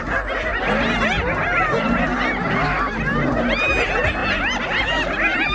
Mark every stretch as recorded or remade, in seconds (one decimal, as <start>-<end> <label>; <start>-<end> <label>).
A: 0.0-5.5 recorded